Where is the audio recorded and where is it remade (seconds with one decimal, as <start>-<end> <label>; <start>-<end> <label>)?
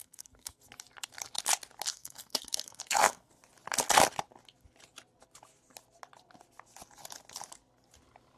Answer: 0.0-0.6 remade; 0.6-1.9 recorded; 1.9-3.3 remade; 3.3-8.4 recorded